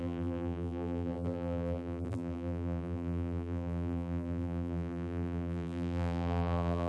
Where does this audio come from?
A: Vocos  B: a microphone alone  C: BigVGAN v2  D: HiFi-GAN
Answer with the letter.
C